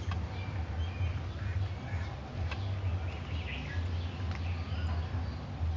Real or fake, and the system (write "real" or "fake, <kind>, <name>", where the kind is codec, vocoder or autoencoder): real